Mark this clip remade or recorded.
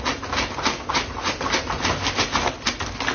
recorded